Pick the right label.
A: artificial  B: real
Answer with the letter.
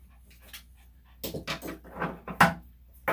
B